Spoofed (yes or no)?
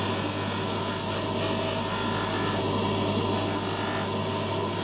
no